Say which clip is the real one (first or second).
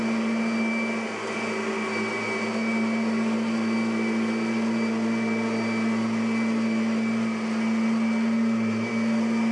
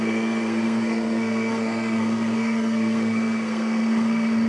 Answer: first